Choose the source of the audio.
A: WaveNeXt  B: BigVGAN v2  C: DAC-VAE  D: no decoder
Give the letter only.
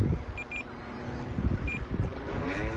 D